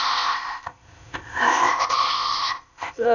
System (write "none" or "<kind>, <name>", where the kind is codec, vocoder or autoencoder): codec, ZipCodec